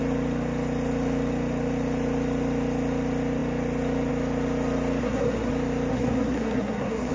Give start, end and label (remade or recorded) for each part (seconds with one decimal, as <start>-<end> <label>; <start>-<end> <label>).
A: 0.0-5.0 recorded; 5.0-5.5 remade; 5.5-5.9 recorded; 5.9-7.1 remade